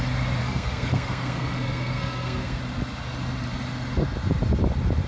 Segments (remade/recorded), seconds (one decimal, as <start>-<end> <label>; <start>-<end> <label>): 0.0-0.4 recorded; 0.4-2.6 remade; 2.6-5.1 recorded